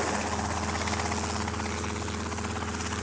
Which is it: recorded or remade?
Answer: recorded